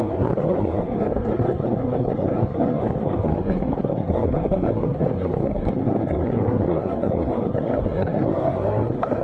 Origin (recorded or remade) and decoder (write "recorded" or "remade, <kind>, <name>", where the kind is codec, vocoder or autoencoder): remade, codec, SNAC